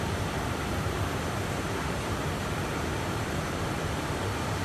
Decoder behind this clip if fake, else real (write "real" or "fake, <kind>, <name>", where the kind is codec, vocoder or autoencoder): fake, vocoder, BigVGAN v2